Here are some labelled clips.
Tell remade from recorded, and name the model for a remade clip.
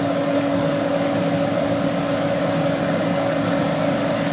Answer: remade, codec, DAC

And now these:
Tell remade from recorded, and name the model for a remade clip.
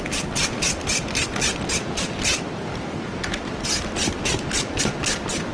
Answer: recorded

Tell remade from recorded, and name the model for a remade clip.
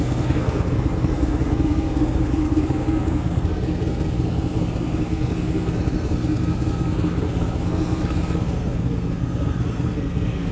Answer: remade, codec, SNAC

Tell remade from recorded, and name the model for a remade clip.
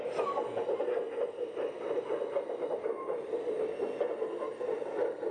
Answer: recorded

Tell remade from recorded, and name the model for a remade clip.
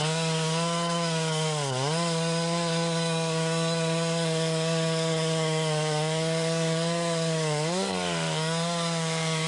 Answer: remade, codec, DAC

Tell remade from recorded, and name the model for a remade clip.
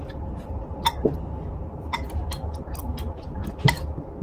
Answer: recorded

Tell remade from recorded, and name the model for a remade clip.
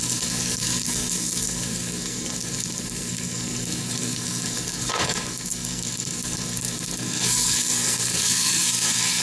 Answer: remade, codec, SNAC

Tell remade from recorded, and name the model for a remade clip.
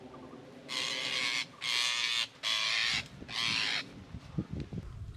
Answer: recorded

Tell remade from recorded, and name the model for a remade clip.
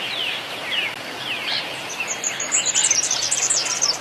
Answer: recorded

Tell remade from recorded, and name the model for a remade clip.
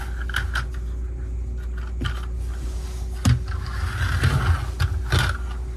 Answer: recorded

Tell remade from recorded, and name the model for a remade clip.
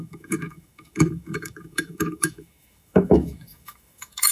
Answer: remade, autoencoder, DAC-VAE